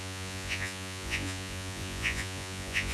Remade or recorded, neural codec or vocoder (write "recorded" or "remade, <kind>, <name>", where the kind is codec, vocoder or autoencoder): remade, vocoder, Vocos